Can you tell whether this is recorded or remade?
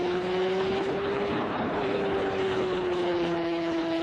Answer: remade